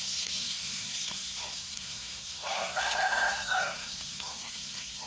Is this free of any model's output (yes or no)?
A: no